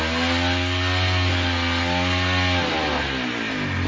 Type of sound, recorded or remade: recorded